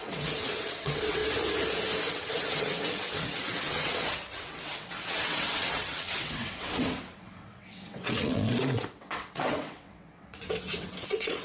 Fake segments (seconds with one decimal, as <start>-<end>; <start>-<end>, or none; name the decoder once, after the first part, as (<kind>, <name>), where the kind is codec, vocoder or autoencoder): 0.0-1.2 (vocoder, WaveNeXt); 2.1-11.4